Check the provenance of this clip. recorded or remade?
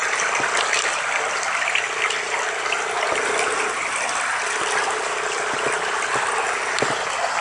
recorded